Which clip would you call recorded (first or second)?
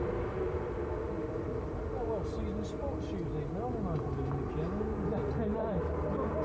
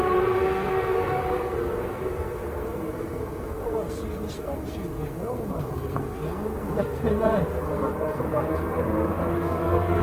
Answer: first